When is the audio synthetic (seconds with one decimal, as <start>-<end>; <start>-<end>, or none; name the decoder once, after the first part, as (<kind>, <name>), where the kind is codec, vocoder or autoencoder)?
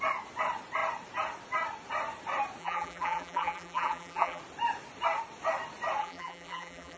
2.6-4.4 (vocoder, BigVGAN v2); 6.0-7.0